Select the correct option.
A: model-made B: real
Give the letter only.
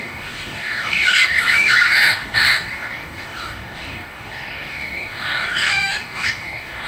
A